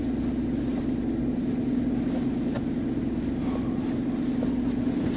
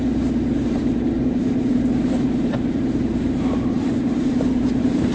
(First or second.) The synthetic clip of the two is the second